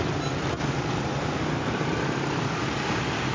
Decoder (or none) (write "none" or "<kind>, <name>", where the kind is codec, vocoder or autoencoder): none